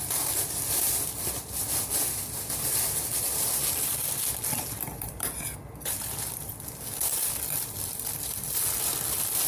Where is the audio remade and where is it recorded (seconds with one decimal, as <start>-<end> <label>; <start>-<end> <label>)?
0.0-7.1 recorded; 7.1-8.6 remade; 8.6-9.5 recorded